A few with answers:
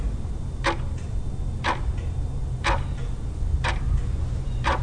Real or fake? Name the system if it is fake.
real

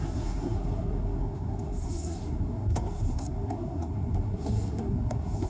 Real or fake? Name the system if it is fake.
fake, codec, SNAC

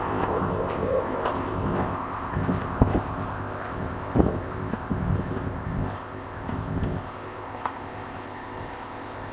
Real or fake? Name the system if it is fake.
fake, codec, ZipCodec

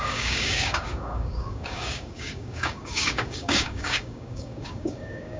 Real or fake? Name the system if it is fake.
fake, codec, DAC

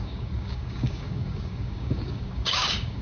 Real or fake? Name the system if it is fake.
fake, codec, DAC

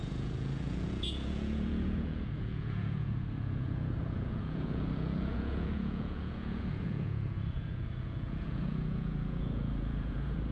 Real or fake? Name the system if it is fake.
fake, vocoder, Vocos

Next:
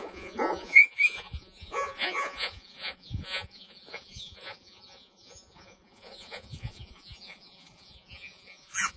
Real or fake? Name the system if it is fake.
fake, vocoder, Vocos